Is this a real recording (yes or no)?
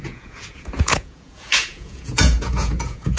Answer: no